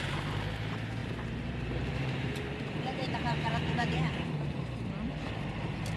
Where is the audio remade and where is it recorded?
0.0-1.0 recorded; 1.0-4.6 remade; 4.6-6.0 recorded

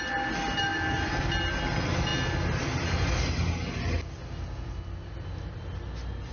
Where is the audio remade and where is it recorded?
0.0-6.3 recorded

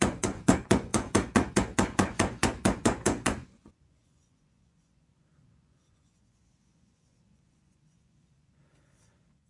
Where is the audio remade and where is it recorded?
0.0-9.5 remade

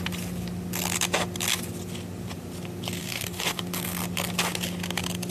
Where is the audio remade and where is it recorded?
0.0-3.0 recorded; 3.0-3.6 remade; 3.6-5.3 recorded

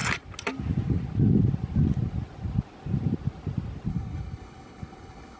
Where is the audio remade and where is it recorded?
0.0-3.9 recorded; 3.9-5.4 remade

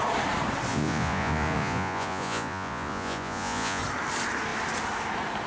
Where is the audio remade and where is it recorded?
0.0-0.7 recorded; 0.7-3.8 remade; 3.8-5.5 recorded